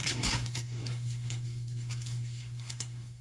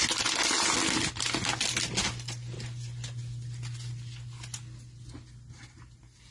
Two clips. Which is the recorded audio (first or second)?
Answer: second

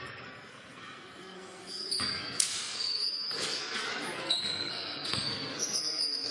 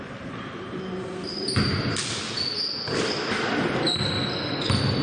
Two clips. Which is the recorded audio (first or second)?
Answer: second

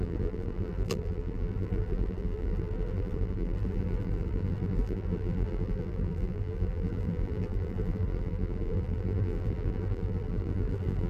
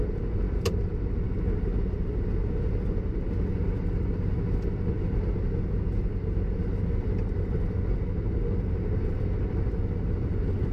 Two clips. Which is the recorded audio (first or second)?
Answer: second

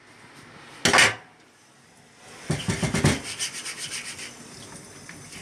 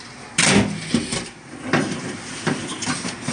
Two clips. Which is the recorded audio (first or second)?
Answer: first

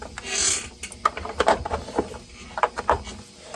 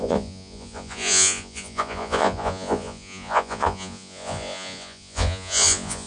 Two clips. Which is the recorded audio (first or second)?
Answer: first